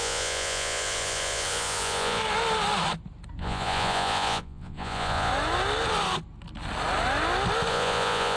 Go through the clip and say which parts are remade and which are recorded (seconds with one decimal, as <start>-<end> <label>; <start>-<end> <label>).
0.0-2.2 remade; 2.2-3.4 recorded; 3.4-5.3 remade; 5.3-7.7 recorded; 7.7-8.4 remade